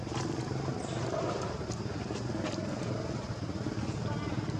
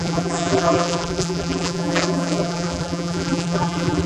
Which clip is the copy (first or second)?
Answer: second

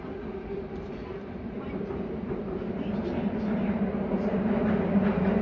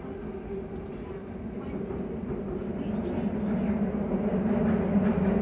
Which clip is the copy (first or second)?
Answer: first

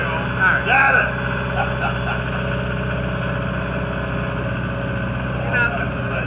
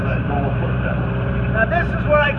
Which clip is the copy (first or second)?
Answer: second